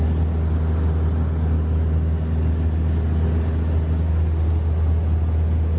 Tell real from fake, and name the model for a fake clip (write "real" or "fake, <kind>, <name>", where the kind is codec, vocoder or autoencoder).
real